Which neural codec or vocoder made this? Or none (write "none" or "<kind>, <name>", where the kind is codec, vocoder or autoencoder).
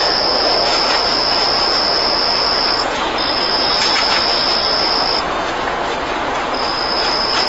vocoder, Vocos